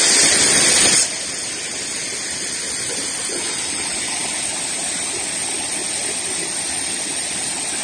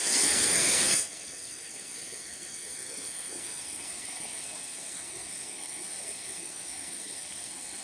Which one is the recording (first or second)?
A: first